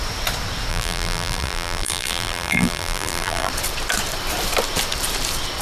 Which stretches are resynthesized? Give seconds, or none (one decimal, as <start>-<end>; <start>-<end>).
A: 0.7-3.5